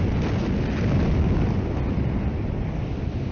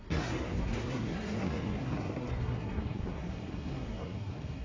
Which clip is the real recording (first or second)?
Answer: first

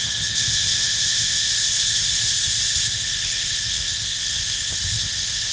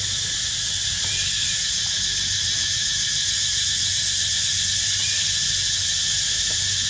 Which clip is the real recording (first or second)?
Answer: second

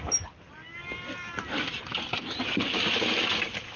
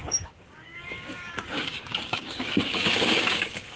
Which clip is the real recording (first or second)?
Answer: first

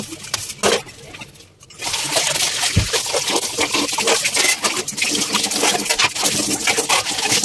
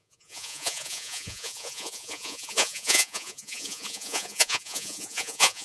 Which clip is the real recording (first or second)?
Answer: first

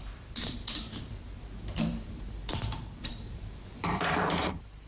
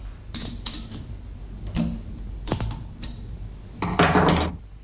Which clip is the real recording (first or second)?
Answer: second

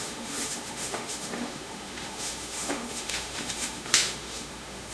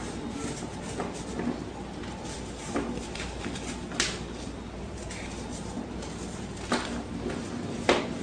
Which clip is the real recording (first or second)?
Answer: second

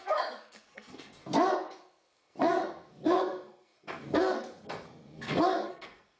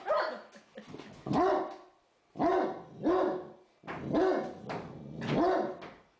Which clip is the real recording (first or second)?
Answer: second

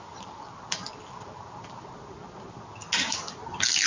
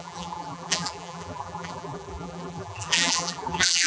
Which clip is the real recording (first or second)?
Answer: first